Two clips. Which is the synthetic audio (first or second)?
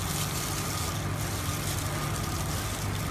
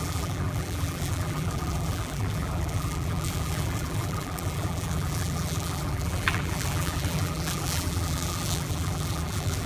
second